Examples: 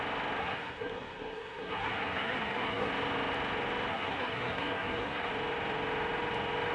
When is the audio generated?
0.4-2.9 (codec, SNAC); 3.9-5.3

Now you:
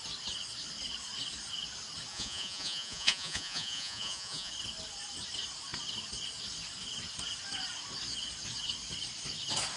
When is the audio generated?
2.1-4.5 (vocoder, Vocos)

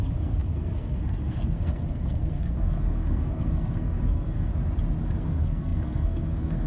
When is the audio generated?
0.0-4.5 (codec, SNAC); 5.0-6.7

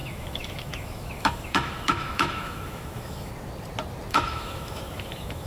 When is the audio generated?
0.0-3.3 (autoencoder, DAC-VAE); 4.1-5.5

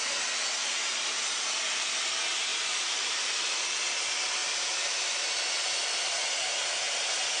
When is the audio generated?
0.6-1.1 (vocoder, BigVGAN v2); 2.5-3.2; 4.4-5.3

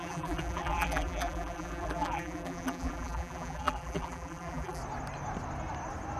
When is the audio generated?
0.0-4.8 (vocoder, BigVGAN v2)

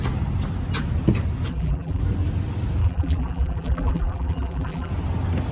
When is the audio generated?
1.5-2.0 (vocoder, BigVGAN v2); 2.8-4.9

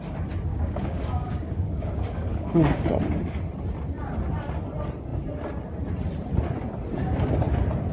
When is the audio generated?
0.5-2.8 (codec, DAC)